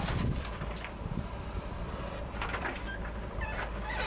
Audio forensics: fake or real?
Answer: fake